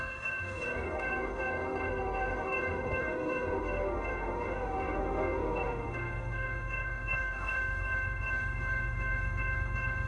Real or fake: fake